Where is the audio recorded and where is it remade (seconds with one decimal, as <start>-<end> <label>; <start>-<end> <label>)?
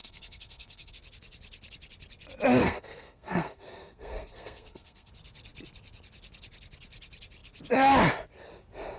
0.0-0.9 remade; 0.9-2.6 recorded; 2.6-5.1 remade; 5.1-9.0 recorded